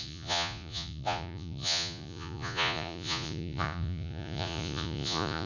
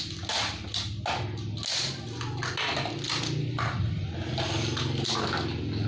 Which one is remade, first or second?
first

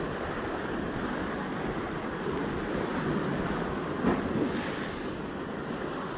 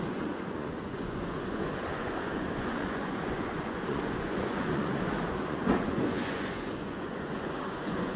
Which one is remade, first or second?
second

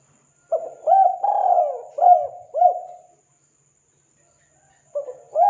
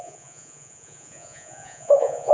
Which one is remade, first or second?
second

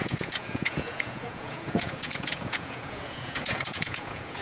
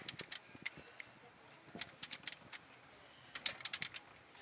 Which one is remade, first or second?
first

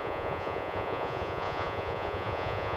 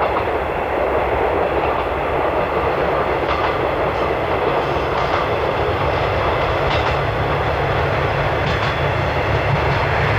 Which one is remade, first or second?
first